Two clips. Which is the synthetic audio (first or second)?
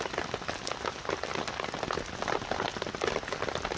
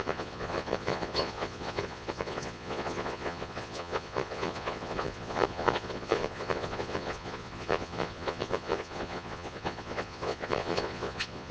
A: second